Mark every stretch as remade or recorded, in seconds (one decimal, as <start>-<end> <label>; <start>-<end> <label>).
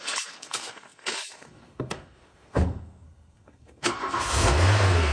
0.0-5.1 remade